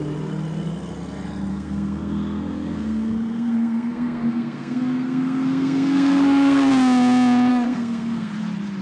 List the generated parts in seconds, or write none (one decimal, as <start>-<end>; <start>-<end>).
1.5-6.7; 7.5-8.3